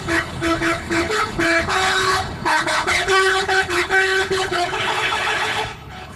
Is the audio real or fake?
fake